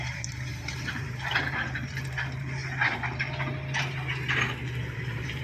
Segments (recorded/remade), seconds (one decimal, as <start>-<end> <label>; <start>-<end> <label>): 0.0-2.6 remade; 2.6-4.8 recorded; 4.8-5.4 remade